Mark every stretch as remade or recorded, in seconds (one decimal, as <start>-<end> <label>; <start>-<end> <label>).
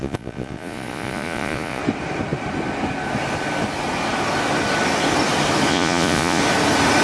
0.0-1.8 remade; 1.8-5.7 recorded; 5.7-6.4 remade; 6.4-7.0 recorded